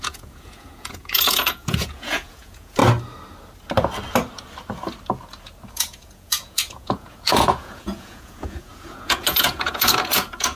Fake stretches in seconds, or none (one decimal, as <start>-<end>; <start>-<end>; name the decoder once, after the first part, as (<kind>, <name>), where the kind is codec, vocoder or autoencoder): 0.0-2.8 (vocoder, Vocos); 5.7-10.6